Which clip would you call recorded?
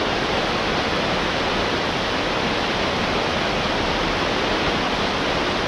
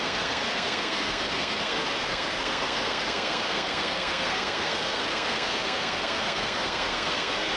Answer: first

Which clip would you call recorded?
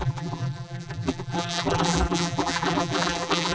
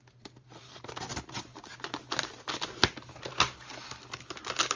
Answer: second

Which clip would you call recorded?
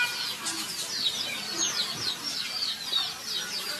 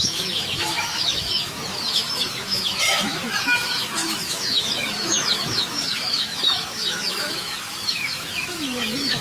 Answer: first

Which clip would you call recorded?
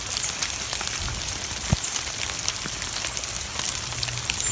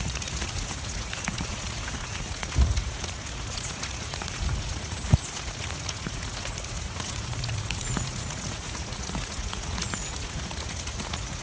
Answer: first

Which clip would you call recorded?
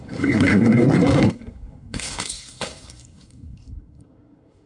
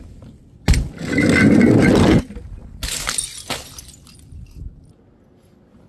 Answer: second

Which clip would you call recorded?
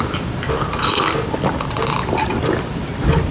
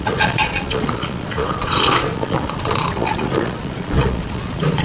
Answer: first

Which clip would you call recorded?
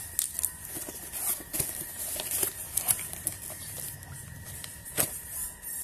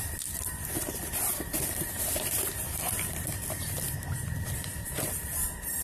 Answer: first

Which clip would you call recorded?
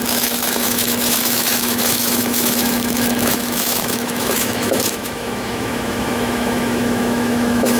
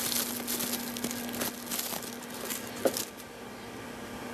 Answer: second